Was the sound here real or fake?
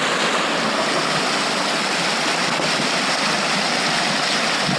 real